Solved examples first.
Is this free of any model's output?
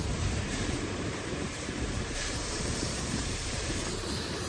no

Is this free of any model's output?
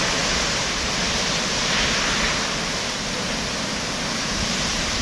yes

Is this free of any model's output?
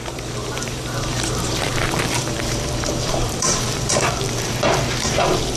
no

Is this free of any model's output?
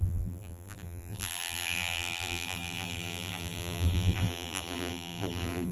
no